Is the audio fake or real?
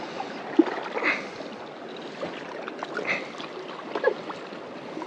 real